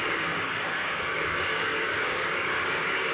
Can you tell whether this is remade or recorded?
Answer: remade